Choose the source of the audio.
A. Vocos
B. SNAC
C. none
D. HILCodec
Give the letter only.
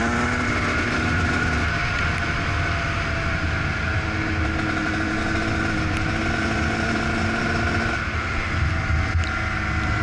C